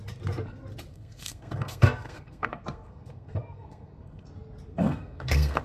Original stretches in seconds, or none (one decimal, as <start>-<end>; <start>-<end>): 0.0-0.9; 4.3-4.7